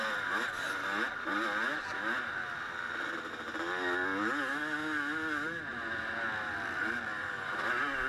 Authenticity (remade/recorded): recorded